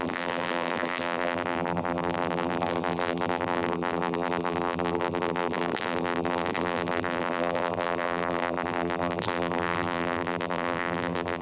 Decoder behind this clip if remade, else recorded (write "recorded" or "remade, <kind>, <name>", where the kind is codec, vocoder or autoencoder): remade, vocoder, BigVGAN v2